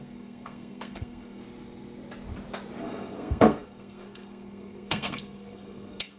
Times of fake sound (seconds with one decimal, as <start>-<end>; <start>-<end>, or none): 0.0-1.4; 2.8-6.2